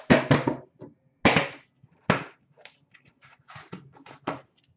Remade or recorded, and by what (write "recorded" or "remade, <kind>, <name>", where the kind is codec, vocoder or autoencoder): recorded